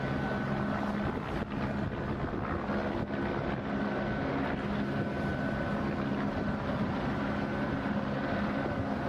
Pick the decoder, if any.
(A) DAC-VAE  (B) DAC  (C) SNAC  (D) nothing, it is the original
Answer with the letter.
D